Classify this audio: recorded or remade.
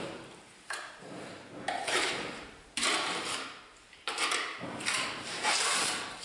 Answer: remade